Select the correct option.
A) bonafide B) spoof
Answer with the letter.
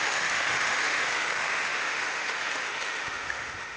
B